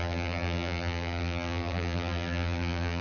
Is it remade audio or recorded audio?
remade